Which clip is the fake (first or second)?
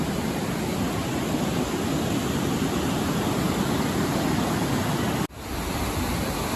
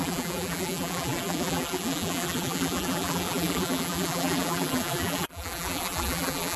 second